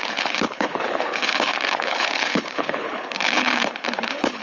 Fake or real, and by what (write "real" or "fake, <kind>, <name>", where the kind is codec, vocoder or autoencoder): fake, codec, HILCodec